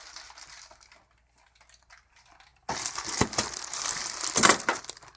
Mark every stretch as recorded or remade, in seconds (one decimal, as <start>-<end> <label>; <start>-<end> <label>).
0.0-5.2 recorded